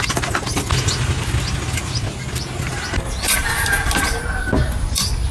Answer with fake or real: real